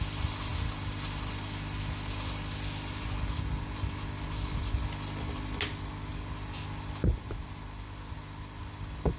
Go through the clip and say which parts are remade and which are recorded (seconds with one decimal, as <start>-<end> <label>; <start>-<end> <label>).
0.0-9.2 recorded